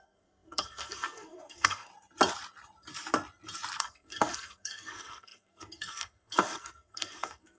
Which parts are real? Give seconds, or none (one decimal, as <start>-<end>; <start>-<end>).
1.9-3.8